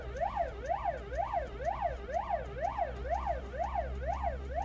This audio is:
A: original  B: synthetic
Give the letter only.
A